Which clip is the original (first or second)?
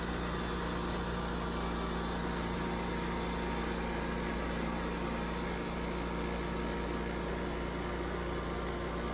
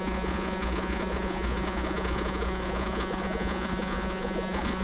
first